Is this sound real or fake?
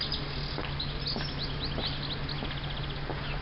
real